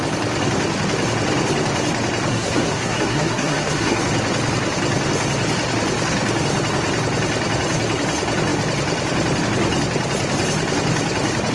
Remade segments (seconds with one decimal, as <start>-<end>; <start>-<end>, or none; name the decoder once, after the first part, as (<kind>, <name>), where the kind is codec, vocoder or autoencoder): 2.3-4.0 (codec, SNAC)

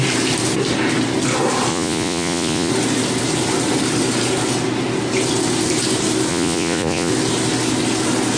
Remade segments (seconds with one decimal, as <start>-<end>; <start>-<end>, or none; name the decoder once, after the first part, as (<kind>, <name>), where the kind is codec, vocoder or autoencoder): 1.7-2.7 (vocoder, Vocos); 6.3-7.1

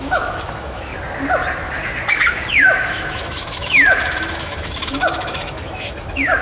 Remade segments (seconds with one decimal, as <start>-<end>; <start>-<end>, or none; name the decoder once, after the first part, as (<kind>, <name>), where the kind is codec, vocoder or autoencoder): 0.0-0.9 (autoencoder, DAC-VAE); 2.6-6.4

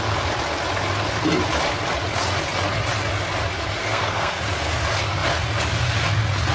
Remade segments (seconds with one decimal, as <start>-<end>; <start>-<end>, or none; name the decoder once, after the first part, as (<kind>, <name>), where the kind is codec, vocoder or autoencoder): 3.8-4.4 (codec, SNAC)

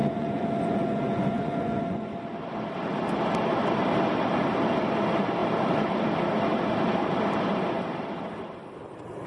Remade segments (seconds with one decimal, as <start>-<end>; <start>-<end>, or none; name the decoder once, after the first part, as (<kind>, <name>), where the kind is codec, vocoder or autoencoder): 0.0-2.1 (vocoder, Vocos)

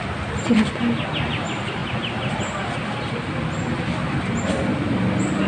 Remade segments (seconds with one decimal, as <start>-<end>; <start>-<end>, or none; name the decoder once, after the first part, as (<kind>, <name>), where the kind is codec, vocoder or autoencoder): none

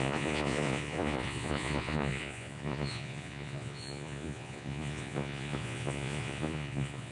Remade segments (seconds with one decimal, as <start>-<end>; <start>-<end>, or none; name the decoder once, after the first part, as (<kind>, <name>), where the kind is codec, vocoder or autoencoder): 0.0-7.1 (vocoder, Vocos)